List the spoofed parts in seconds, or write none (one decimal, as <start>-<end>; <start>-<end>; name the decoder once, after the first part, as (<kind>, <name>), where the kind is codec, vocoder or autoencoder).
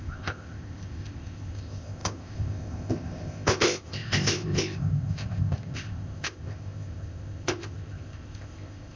0.0-9.0 (codec, ZipCodec)